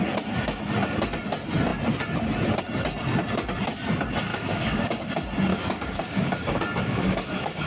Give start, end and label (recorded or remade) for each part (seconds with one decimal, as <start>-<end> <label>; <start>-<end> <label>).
0.0-4.3 recorded; 4.3-5.1 remade; 5.1-5.5 recorded; 5.5-7.7 remade